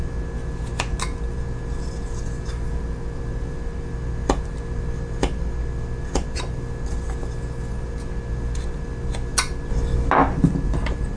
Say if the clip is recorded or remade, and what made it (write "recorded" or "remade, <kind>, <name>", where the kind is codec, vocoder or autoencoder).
recorded